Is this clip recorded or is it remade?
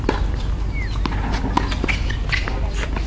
recorded